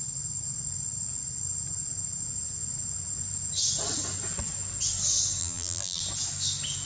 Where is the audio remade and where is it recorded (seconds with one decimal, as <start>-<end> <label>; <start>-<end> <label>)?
0.0-5.4 recorded; 5.4-6.0 remade; 6.0-6.9 recorded